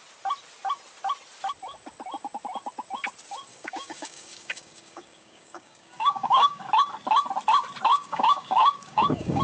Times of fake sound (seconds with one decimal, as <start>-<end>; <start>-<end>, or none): 3.5-6.7; 7.9-9.4